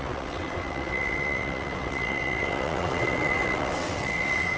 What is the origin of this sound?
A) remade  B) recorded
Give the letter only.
A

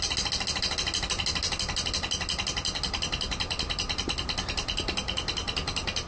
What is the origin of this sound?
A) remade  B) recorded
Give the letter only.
B